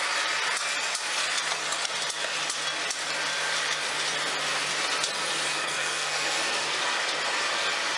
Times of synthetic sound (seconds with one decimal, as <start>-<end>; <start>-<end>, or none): 5.5-6.8